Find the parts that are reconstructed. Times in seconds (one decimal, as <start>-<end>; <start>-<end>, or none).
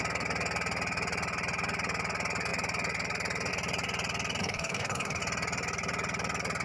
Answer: 4.4-5.2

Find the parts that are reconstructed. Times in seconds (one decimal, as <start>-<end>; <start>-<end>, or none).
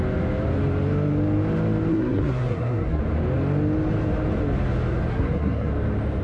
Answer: 1.9-3.0; 5.1-5.7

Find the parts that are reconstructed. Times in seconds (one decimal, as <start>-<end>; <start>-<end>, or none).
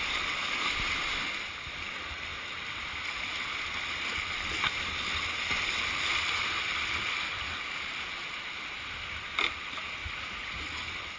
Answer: 10.0-10.6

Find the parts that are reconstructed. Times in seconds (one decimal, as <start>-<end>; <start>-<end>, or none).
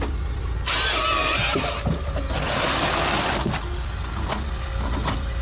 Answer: none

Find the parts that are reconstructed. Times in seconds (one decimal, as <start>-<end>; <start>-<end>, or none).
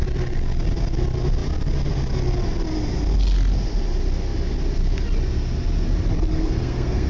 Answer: 6.3-7.1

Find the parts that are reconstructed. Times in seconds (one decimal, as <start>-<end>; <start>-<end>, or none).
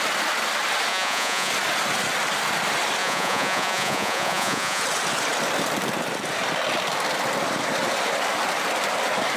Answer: 0.9-1.5; 3.0-4.8